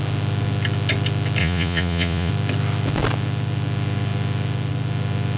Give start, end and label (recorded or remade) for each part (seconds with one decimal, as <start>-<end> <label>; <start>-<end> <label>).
0.0-1.4 recorded; 1.4-2.3 remade; 2.3-5.4 recorded